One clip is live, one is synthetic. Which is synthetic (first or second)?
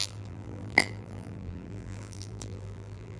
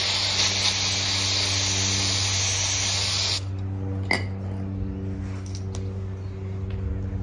first